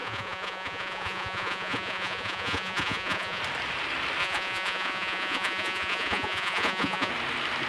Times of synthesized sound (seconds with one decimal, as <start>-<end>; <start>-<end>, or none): 0.0-3.4; 4.2-7.1